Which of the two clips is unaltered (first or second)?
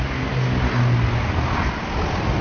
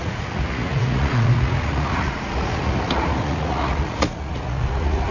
first